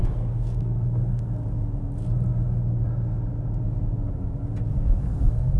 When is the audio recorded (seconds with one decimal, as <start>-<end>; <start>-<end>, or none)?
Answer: 1.3-4.7